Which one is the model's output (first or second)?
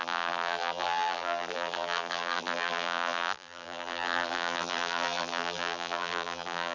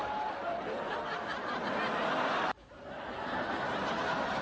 first